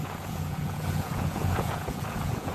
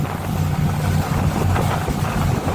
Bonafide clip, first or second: second